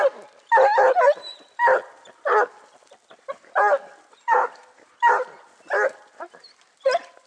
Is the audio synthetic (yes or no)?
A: no